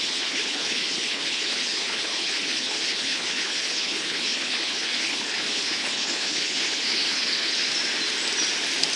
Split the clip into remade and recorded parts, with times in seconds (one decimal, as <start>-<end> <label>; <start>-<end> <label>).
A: 0.0-7.7 remade; 7.7-9.0 recorded